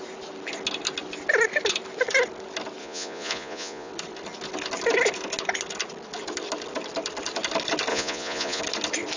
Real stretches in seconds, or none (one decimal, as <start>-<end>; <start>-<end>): 0.0-2.8; 3.9-7.9; 8.6-9.2